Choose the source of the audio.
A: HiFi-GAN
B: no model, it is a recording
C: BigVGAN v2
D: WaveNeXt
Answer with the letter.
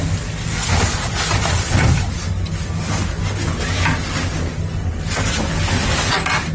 B